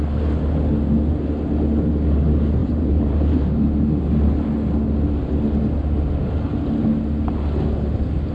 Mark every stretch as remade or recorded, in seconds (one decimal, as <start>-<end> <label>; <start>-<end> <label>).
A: 0.0-2.6 recorded; 2.6-4.0 remade; 4.0-8.3 recorded

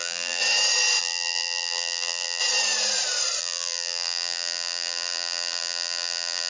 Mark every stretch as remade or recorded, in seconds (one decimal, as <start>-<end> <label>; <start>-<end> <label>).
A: 0.0-0.4 remade; 0.4-1.0 recorded; 1.0-2.4 remade; 2.4-3.4 recorded; 3.4-6.5 remade

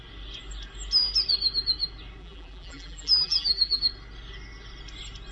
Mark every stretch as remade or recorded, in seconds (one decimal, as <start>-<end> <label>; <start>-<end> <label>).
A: 0.0-2.2 recorded; 2.2-3.8 remade; 3.8-5.3 recorded

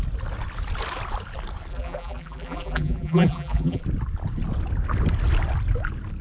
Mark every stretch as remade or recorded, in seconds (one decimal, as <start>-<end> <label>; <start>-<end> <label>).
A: 0.0-1.7 recorded; 1.7-3.8 remade; 3.8-6.2 recorded

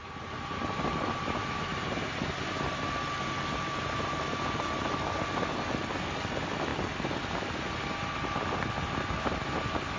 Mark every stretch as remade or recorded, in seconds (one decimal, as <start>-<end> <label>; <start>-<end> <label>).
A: 0.0-2.5 remade; 2.5-10.0 recorded